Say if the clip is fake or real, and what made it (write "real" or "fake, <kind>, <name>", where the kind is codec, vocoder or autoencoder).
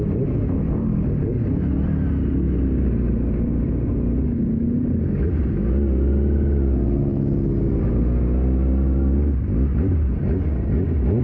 real